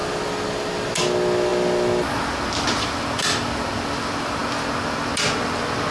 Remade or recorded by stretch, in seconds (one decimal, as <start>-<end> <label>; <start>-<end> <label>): 0.0-5.9 recorded